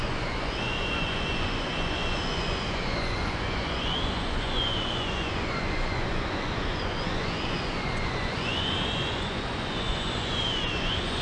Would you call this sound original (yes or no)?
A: no